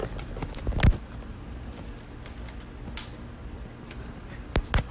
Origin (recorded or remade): recorded